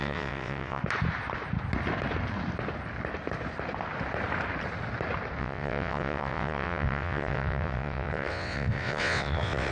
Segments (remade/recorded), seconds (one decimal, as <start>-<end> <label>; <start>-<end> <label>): 0.0-0.8 remade; 0.8-5.4 recorded; 5.4-9.7 remade